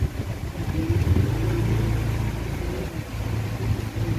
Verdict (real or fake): real